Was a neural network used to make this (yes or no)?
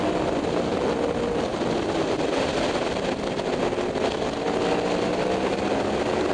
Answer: no